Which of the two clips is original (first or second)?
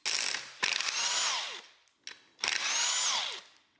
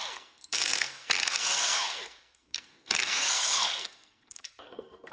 first